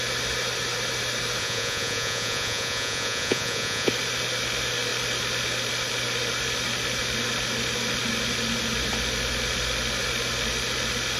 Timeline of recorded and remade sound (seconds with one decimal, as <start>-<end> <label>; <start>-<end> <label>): 0.0-1.4 recorded; 1.4-3.9 remade; 3.9-11.2 recorded